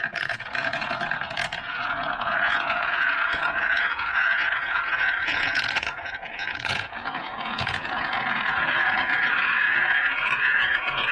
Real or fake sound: fake